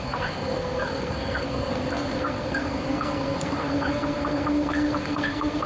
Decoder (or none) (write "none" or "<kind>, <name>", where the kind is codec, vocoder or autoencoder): codec, SNAC